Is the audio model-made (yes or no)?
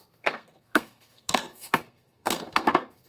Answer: yes